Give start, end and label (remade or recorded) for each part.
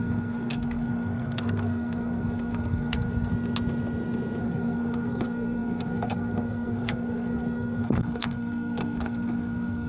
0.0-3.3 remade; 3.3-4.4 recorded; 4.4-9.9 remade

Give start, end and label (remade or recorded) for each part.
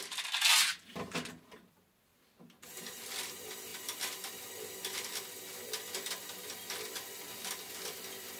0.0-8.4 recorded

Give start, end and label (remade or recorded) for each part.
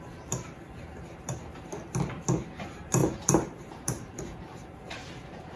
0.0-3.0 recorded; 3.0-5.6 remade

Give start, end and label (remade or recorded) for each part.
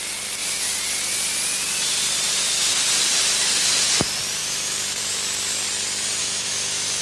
0.0-4.4 recorded; 4.4-5.0 remade; 5.0-6.2 recorded; 6.2-7.0 remade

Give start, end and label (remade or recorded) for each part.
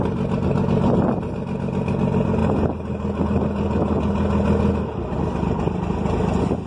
0.0-6.7 recorded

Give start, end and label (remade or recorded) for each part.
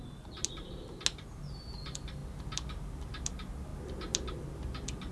0.0-5.1 recorded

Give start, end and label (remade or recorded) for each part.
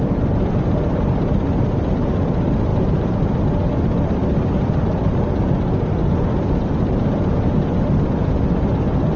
0.0-2.7 recorded; 2.7-3.2 remade; 3.2-9.2 recorded